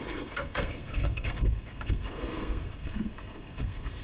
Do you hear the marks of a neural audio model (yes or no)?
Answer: yes